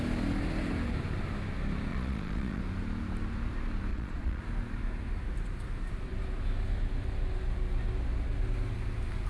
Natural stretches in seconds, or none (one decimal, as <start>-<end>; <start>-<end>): 0.0-1.9; 2.6-3.9; 4.4-9.3